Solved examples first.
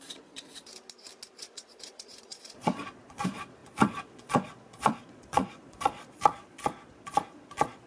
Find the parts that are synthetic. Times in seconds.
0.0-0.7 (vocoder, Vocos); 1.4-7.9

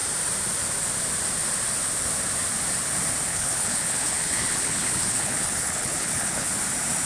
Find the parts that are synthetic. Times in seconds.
3.3-6.5 (codec, HILCodec)

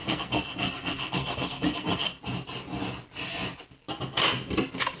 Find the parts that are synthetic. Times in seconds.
0.0-2.2 (codec, SNAC)

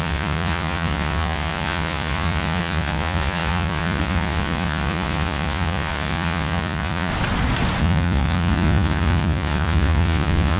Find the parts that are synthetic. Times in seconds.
0.0-7.1 (vocoder, Vocos); 7.8-10.6